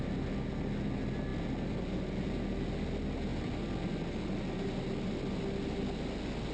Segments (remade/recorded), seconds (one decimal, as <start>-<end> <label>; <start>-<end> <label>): 0.0-6.5 recorded